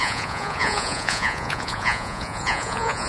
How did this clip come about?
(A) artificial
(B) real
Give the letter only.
A